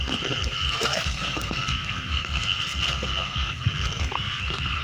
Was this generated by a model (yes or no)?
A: yes